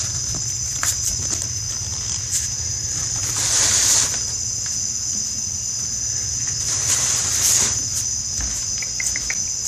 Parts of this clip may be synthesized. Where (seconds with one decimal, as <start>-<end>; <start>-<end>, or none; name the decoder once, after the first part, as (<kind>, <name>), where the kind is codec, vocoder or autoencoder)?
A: none